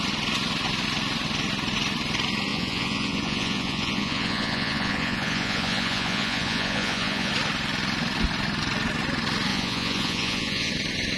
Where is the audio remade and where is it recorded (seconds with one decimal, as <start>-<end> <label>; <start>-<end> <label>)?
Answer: 0.0-2.5 recorded; 2.5-7.3 remade; 7.3-9.5 recorded; 9.5-10.7 remade; 10.7-11.2 recorded